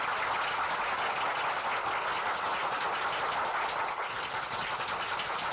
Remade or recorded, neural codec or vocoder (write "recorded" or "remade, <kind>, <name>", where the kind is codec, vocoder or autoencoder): recorded